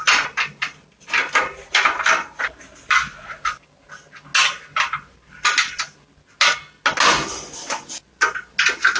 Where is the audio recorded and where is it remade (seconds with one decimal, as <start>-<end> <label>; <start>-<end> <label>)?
0.0-9.0 recorded